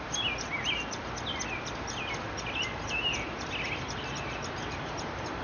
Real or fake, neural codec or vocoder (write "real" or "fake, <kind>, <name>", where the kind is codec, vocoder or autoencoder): real